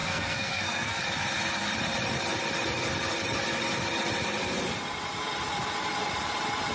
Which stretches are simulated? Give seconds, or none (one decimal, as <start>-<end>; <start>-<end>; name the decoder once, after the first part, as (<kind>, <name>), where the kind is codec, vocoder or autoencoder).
0.0-1.0 (codec, SNAC)